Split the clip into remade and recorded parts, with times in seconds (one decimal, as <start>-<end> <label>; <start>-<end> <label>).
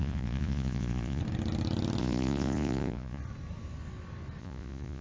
0.0-1.2 remade; 1.2-2.0 recorded; 2.0-3.2 remade; 3.2-4.4 recorded; 4.4-5.0 remade